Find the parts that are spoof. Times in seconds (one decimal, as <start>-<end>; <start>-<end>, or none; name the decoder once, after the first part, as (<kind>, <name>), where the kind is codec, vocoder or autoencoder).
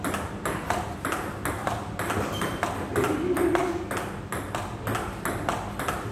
none